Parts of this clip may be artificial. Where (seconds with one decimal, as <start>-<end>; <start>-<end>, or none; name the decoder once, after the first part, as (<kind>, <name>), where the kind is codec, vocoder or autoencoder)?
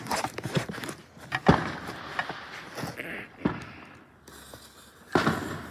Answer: none